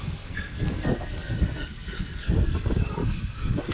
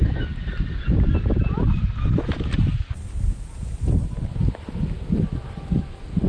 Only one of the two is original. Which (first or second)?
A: second